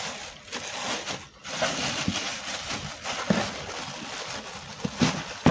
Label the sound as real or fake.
real